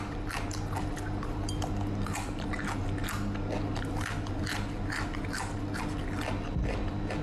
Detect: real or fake real